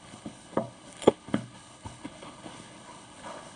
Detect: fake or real fake